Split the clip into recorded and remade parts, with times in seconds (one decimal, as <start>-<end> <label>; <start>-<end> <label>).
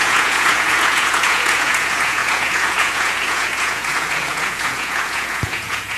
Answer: 0.0-6.0 remade